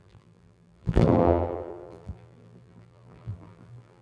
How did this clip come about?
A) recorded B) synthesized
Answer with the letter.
B